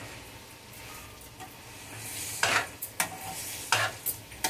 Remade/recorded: recorded